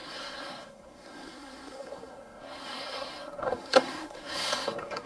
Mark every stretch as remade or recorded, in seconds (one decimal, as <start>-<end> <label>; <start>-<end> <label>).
0.0-5.1 remade